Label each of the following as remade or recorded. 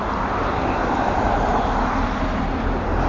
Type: recorded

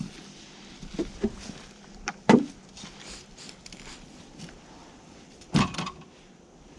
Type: remade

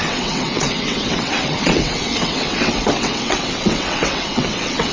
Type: remade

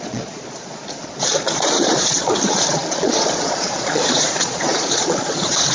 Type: remade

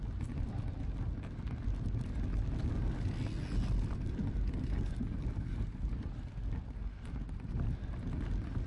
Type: recorded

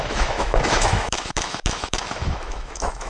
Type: remade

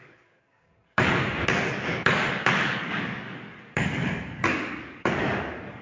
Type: remade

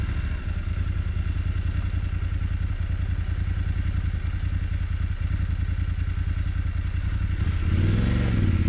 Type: recorded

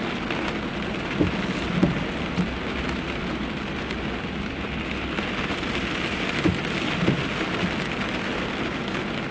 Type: recorded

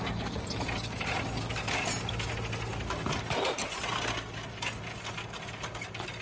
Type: recorded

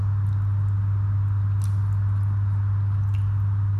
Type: recorded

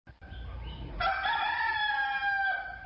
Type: recorded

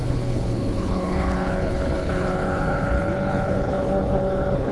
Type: remade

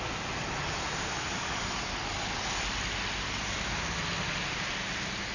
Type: recorded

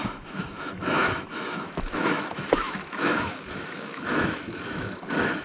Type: remade